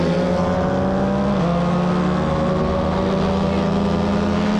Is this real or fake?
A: real